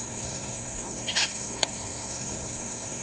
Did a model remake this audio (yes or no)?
yes